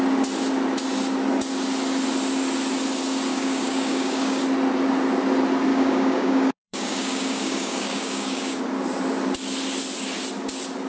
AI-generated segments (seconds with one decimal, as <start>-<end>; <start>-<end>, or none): 3.3-4.4; 5.7-8.6